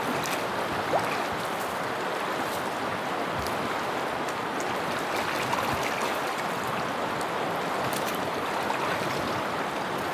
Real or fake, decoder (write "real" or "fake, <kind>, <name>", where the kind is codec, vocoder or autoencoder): real